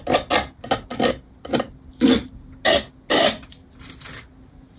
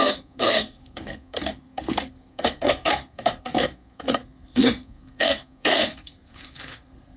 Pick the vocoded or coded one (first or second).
second